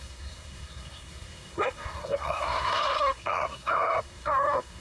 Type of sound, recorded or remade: remade